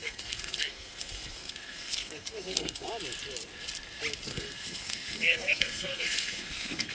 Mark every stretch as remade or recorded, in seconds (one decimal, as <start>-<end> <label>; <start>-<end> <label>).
0.0-2.9 remade; 2.9-4.3 recorded; 4.3-6.9 remade